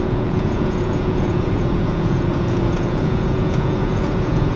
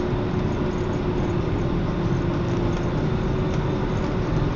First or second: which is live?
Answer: second